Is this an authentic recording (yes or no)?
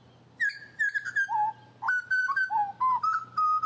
yes